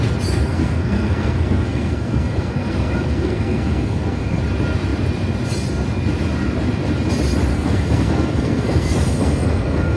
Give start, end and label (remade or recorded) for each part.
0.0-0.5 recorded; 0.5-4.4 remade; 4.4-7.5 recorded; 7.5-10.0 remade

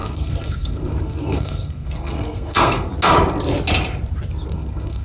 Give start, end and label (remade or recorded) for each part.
0.0-2.9 remade; 2.9-4.5 recorded; 4.5-5.0 remade